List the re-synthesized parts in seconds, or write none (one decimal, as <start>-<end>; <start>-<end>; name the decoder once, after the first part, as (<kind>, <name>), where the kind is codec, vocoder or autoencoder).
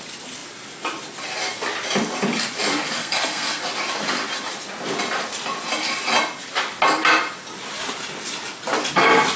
3.0-3.6 (codec, SNAC)